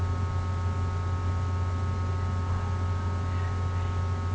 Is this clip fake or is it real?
real